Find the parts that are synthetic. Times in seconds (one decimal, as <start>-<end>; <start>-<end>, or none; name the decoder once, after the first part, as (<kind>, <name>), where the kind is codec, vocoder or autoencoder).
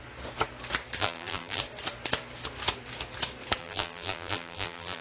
1.0-1.6 (vocoder, BigVGAN v2); 3.6-5.0